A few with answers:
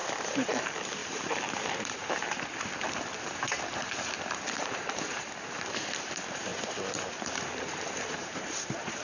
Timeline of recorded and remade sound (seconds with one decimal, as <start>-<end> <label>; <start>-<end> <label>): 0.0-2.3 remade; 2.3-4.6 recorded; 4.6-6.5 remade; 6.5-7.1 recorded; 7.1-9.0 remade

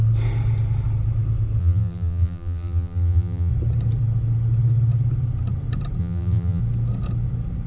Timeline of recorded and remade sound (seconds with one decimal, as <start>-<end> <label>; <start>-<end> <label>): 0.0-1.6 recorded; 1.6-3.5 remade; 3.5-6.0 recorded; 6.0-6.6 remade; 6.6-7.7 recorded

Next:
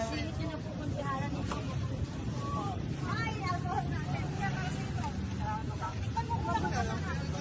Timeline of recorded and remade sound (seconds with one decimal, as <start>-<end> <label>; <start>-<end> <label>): 0.0-0.7 recorded; 0.7-4.4 remade; 4.4-5.6 recorded; 5.6-6.5 remade; 6.5-7.4 recorded